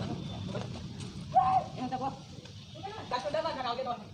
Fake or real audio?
real